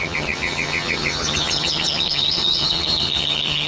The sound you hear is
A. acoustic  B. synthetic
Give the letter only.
B